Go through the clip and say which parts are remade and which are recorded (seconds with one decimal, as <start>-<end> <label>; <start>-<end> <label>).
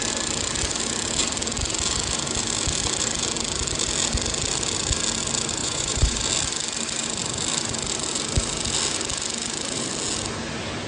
0.0-5.6 recorded; 5.6-6.2 remade; 6.2-10.9 recorded